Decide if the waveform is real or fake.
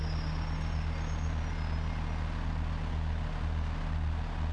real